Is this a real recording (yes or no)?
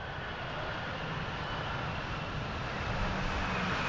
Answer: yes